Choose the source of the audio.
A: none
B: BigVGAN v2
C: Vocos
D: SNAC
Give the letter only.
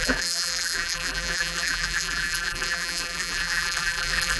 B